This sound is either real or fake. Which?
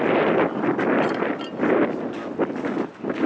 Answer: real